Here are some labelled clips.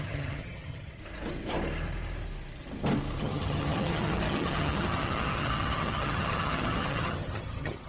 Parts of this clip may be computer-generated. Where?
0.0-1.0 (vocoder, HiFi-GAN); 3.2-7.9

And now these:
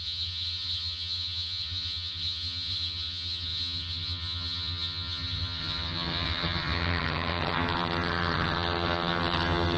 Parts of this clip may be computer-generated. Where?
0.0-9.8 (vocoder, HiFi-GAN)

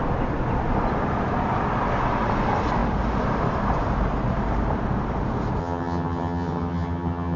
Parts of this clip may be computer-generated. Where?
5.6-7.4 (vocoder, HiFi-GAN)

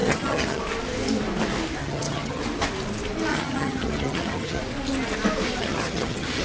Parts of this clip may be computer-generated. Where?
0.0-0.6 (vocoder, HiFi-GAN); 1.8-2.4; 3.3-4.6; 5.6-6.4

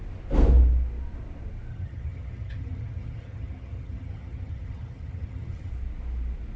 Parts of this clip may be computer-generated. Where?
1.7-5.7 (vocoder, HiFi-GAN)

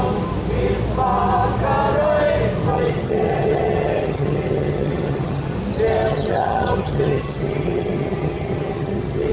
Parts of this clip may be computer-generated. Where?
2.7-5.5 (vocoder, HiFi-GAN); 6.1-9.3